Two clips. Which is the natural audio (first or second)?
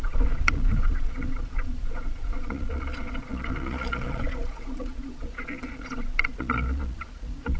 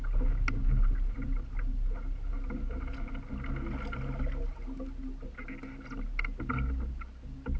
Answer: second